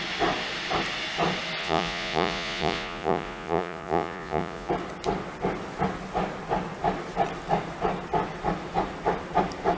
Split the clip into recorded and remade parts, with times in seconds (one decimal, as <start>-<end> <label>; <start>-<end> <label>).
0.0-1.6 recorded; 1.6-4.7 remade; 4.7-9.8 recorded